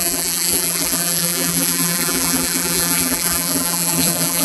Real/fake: fake